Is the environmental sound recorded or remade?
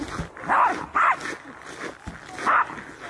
recorded